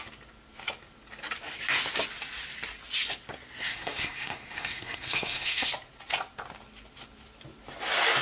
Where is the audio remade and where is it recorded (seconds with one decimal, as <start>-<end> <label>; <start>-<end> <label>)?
0.0-3.7 recorded; 3.7-5.7 remade; 5.7-8.2 recorded